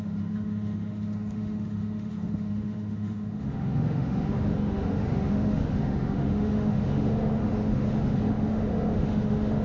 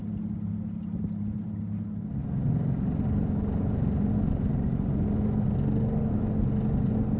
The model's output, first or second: first